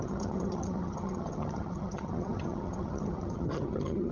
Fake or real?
fake